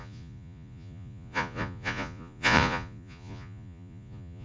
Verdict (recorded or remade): remade